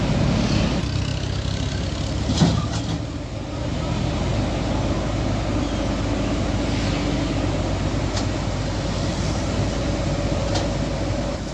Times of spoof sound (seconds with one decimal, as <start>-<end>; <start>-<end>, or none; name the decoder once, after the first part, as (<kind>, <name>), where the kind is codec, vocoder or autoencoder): 9.1-10.5 (vocoder, BigVGAN v2)